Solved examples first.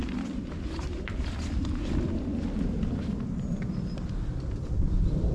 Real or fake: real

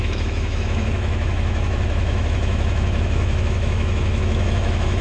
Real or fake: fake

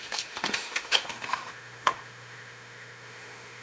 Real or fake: fake